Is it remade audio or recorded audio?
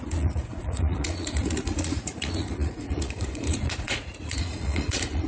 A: remade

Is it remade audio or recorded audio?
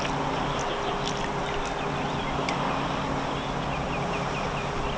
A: recorded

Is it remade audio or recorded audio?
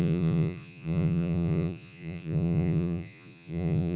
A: remade